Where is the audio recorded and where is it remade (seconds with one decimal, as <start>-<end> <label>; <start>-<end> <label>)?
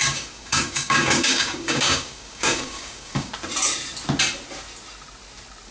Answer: 0.0-3.3 remade; 3.3-5.7 recorded